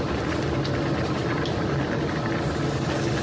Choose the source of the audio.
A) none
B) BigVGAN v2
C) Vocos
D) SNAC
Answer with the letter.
A